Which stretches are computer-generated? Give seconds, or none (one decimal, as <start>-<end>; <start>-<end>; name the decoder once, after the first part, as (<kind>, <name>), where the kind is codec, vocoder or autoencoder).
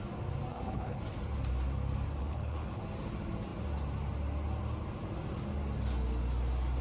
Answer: 0.5-1.0 (codec, HILCodec); 2.2-2.8